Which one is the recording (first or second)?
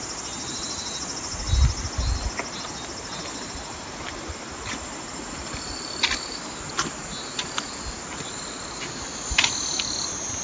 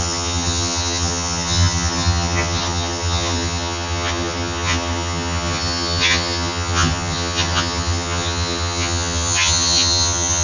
first